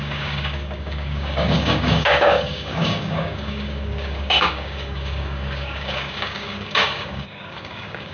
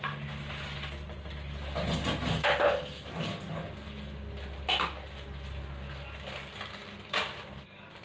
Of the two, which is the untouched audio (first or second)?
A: second